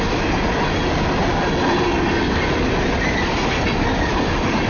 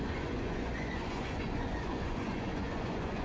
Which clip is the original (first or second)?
first